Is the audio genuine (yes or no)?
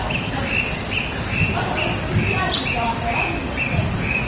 no